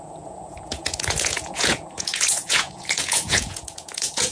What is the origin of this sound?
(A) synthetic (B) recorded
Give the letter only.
A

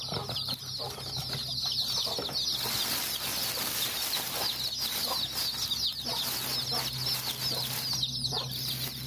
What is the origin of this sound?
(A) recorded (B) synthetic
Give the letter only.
A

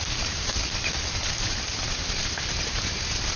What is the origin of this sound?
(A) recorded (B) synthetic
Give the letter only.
A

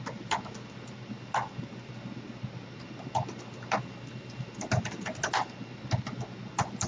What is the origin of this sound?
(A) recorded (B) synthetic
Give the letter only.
A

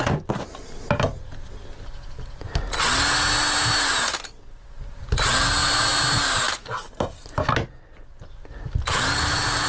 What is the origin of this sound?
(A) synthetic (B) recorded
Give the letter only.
B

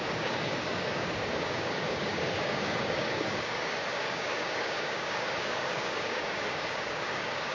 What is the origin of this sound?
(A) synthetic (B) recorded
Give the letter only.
A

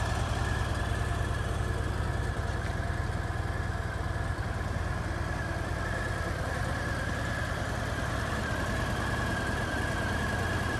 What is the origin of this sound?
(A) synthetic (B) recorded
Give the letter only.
B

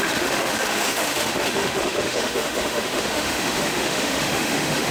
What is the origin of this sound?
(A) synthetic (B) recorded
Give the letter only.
A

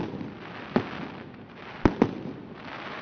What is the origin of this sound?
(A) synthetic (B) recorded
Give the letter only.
B